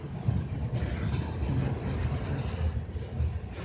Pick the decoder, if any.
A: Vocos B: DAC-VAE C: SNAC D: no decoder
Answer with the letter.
D